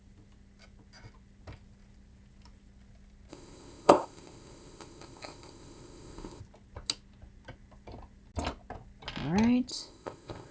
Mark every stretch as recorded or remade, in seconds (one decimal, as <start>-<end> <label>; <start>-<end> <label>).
0.0-3.3 recorded; 3.3-6.4 remade; 6.4-9.7 recorded; 9.7-10.5 remade